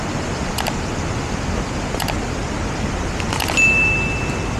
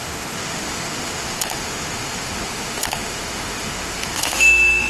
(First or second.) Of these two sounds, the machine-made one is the second